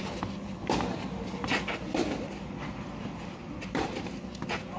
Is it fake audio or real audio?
real